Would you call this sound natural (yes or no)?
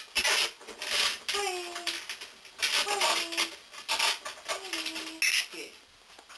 yes